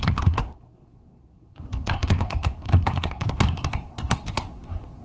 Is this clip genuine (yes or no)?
no